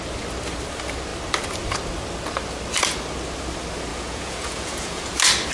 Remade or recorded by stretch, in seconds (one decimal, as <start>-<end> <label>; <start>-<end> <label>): 0.0-3.9 recorded; 3.9-5.1 remade; 5.1-5.5 recorded